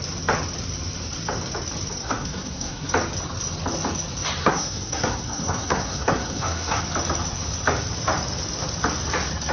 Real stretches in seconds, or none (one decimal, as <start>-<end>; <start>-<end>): 0.0-2.0; 2.9-4.4; 6.8-9.5